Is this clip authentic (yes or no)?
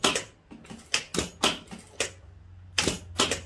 yes